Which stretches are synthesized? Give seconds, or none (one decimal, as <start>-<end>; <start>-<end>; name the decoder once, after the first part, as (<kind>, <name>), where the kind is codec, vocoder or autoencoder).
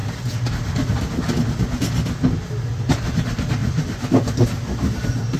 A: 3.6-5.4 (vocoder, BigVGAN v2)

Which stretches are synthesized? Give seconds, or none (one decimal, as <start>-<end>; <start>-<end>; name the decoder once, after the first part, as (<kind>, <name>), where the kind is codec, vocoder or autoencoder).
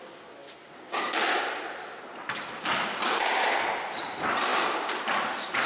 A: none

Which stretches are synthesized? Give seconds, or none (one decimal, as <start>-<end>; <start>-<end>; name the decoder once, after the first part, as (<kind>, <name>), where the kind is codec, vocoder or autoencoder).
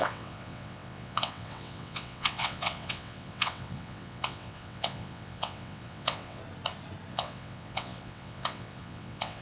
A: 0.0-6.4 (vocoder, WaveNeXt); 7.1-9.4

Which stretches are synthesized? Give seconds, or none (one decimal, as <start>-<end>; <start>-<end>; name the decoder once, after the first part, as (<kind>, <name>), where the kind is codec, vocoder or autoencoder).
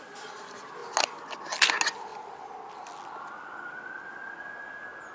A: none